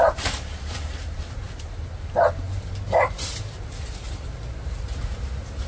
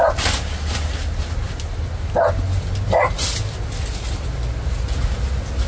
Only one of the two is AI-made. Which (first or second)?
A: first